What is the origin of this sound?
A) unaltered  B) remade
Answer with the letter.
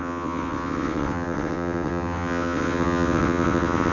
B